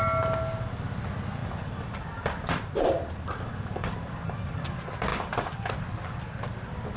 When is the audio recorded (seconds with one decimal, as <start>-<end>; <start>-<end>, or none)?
0.0-1.4; 4.6-5.1; 5.7-7.0